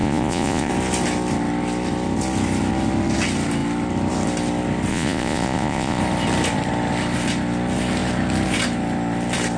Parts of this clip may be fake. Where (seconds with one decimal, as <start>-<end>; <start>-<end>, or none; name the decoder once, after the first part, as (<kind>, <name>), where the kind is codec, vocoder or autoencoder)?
0.0-0.7 (vocoder, Vocos); 4.9-6.0